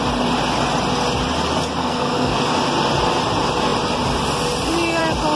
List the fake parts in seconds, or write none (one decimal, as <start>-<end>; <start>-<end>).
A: 1.8-2.4